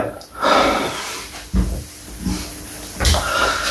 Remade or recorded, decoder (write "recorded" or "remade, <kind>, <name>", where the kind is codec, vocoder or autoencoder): recorded